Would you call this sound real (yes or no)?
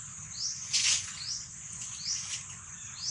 no